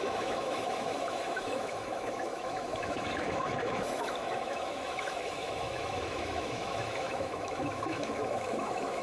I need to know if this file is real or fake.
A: fake